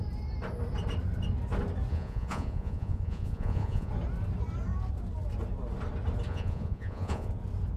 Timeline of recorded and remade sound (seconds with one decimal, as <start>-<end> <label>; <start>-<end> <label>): 0.0-1.9 recorded; 1.9-3.9 remade; 3.9-6.3 recorded; 6.3-7.3 remade; 7.3-7.8 recorded